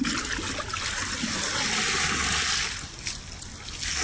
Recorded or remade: recorded